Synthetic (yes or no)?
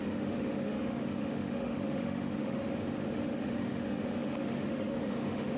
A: yes